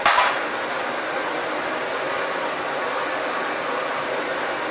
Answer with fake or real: real